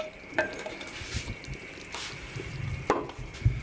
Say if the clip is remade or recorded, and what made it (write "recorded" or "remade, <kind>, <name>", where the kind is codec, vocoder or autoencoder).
recorded